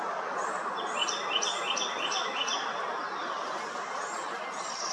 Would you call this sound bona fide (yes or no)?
yes